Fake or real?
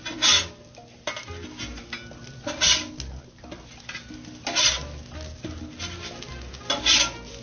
real